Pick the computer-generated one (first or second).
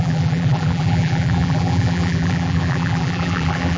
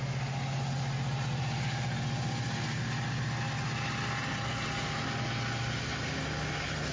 first